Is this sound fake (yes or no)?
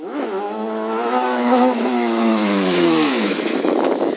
yes